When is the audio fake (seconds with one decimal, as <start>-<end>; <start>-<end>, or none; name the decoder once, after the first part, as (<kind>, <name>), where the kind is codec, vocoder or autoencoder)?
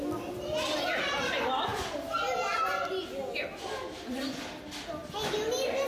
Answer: none